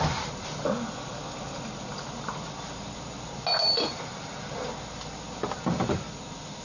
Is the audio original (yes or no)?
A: yes